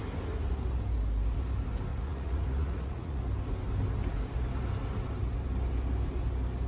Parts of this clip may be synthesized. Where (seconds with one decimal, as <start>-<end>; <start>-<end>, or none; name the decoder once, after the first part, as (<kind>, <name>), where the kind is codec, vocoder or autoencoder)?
1.9-3.2 (vocoder, Vocos)